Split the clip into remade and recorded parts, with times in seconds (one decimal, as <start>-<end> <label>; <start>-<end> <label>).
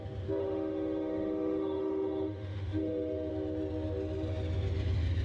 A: 0.0-0.4 recorded; 0.4-3.3 remade; 3.3-5.2 recorded